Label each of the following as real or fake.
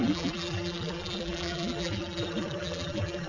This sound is fake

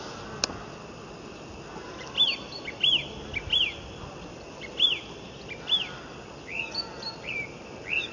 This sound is real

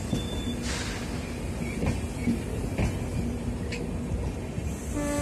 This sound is real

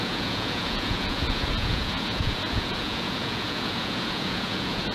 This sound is fake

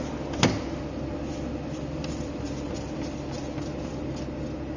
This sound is real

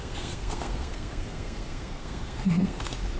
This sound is fake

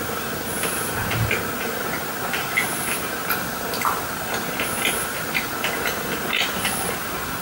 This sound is real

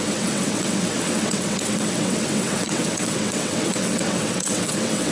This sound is fake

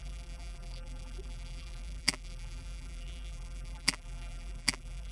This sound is fake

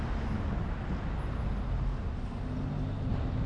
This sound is real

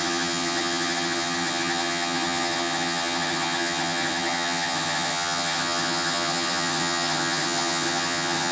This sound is fake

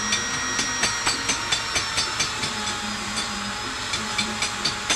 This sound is real